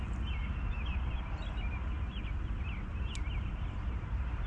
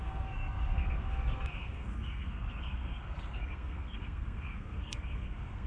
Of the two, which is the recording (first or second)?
first